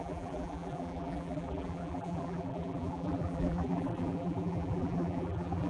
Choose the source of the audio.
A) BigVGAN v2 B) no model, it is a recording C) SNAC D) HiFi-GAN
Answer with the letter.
A